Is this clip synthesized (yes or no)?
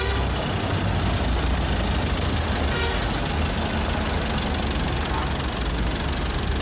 no